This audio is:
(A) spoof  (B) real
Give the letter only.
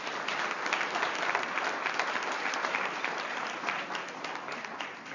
A